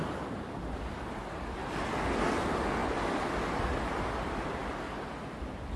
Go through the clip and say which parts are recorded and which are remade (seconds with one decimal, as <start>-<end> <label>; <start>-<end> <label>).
0.0-5.8 recorded